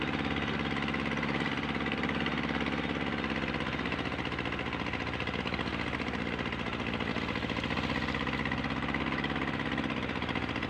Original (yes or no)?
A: yes